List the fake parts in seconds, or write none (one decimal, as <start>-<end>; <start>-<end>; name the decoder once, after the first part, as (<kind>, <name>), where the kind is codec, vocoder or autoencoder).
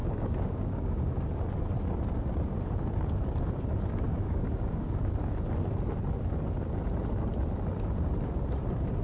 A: 0.0-1.2 (codec, DAC); 4.1-5.0